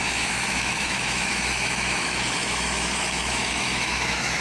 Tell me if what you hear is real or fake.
fake